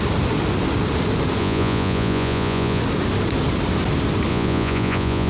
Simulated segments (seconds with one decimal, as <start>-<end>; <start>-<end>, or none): 1.4-2.8; 4.3-5.3